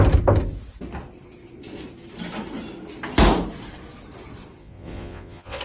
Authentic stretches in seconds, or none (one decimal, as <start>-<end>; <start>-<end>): 0.0-4.6

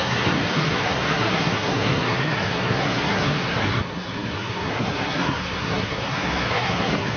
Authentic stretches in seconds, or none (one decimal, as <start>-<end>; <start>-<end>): none